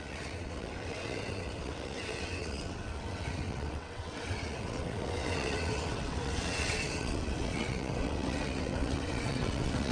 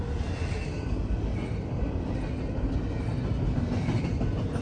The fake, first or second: first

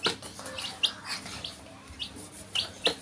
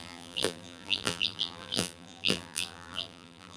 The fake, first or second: second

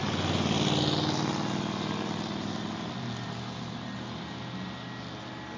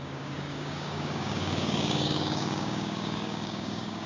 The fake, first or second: second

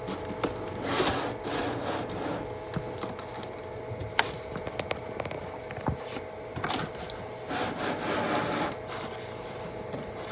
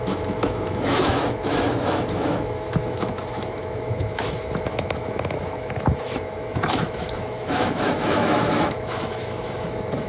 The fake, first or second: second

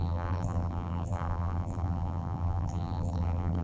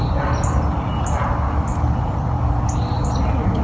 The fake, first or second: first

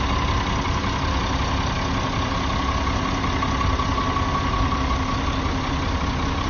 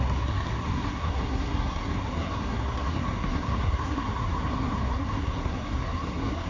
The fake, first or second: second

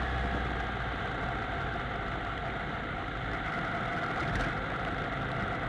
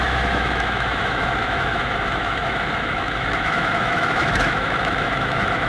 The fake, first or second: second